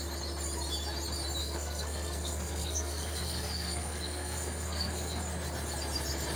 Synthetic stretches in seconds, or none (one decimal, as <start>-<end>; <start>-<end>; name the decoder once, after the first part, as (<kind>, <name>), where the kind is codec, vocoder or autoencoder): 1.4-5.2 (codec, SNAC)